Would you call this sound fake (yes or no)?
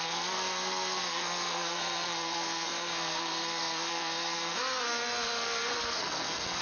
yes